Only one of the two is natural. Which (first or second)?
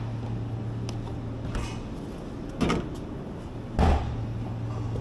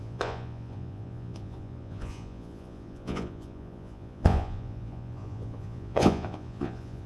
first